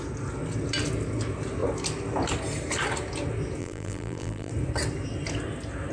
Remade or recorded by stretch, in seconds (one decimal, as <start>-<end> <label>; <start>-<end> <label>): 0.0-3.6 recorded; 3.6-4.5 remade; 4.5-5.9 recorded